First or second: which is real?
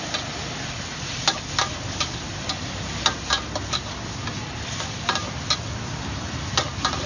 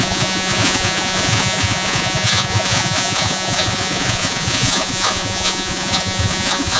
first